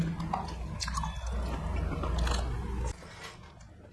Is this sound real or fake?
real